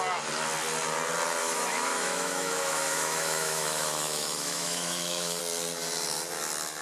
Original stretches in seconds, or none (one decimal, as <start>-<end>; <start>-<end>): 0.0-1.4; 5.4-6.8